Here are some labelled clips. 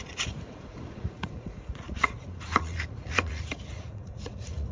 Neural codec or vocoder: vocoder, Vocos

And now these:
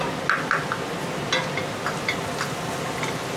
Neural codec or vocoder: none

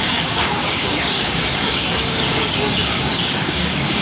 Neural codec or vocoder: codec, DAC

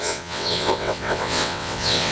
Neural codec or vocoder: vocoder, WaveNeXt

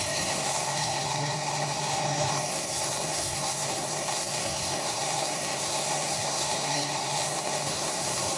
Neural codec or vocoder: codec, SNAC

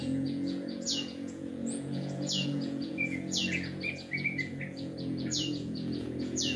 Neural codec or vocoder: vocoder, Vocos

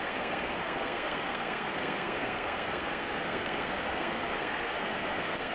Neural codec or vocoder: codec, SNAC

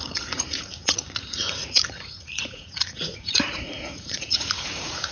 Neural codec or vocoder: vocoder, Vocos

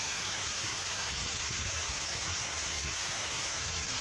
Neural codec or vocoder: codec, SNAC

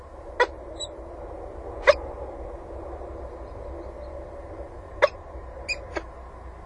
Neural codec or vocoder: none